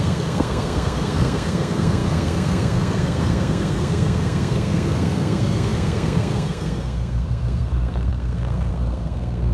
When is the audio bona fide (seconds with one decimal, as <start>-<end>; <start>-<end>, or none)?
none